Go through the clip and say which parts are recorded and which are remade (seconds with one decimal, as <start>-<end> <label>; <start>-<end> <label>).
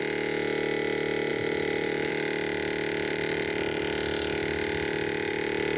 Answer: 0.0-1.3 recorded; 1.3-2.1 remade; 2.1-3.1 recorded; 3.1-3.8 remade; 3.8-5.8 recorded